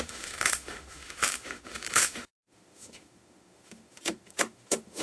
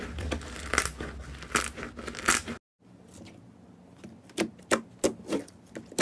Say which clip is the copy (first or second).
first